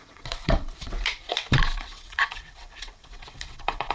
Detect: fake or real fake